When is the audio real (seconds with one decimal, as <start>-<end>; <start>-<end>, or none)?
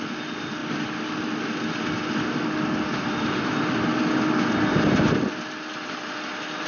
0.0-6.7